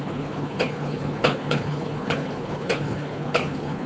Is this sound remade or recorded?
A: remade